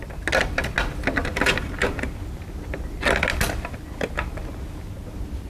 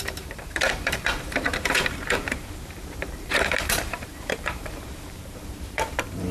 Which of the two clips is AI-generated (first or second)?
second